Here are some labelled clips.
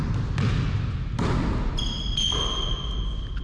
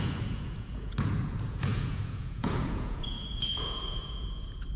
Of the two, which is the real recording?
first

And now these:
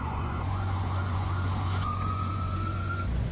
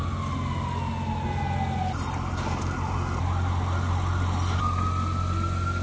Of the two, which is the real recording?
second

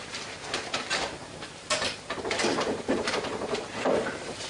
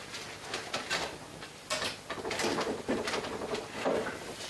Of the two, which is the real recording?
second